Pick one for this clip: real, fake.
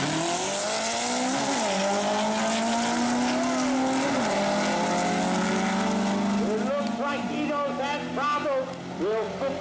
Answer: real